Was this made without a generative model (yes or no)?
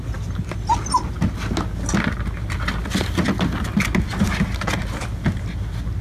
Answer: yes